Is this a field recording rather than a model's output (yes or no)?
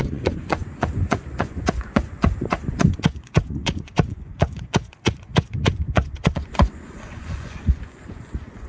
no